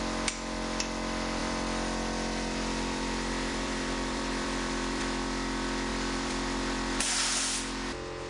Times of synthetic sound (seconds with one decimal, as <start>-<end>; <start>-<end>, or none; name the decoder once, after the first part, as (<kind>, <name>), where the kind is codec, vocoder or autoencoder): 1.4-5.0 (vocoder, BigVGAN v2); 5.9-7.0